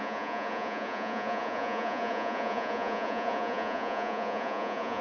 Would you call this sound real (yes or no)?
no